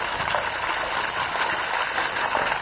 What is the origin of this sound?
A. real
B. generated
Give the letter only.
A